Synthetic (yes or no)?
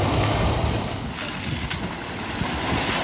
no